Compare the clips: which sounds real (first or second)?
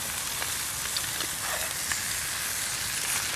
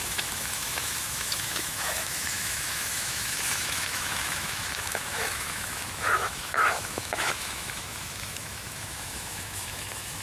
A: first